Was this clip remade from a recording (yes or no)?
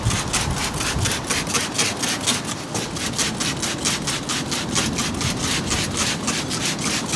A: yes